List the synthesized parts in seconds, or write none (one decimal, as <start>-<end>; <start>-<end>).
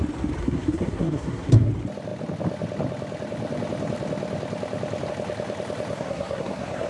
0.4-1.7; 5.9-6.9